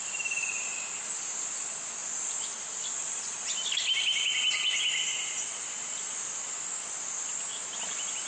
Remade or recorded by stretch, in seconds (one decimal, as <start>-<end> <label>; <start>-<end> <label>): 0.0-8.3 recorded